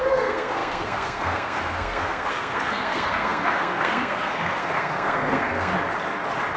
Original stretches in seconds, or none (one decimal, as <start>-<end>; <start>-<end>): 5.7-6.6

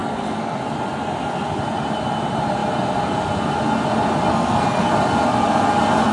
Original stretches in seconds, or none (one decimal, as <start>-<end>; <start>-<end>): 0.6-4.3; 4.9-6.1

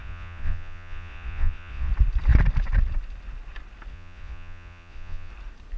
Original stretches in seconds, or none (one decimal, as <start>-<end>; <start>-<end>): 1.9-3.9; 5.3-5.8

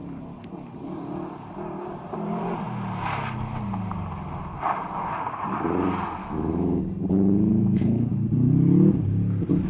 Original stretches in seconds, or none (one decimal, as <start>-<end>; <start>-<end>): 0.0-6.2; 6.8-7.5; 8.1-9.7

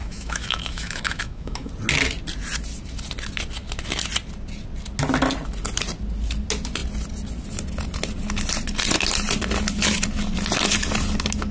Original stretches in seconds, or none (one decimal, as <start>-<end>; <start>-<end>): 1.7-11.5

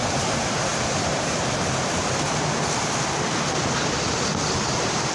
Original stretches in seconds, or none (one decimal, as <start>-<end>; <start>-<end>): 0.0-5.1

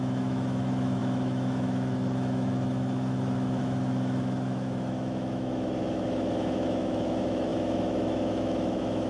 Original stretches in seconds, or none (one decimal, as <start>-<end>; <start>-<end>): none

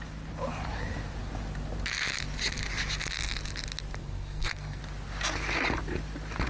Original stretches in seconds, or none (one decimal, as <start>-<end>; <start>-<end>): 0.0-4.0; 4.8-6.5